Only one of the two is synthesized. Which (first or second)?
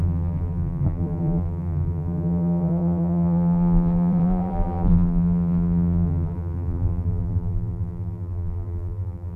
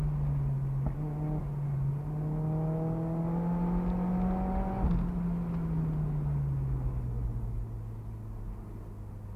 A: first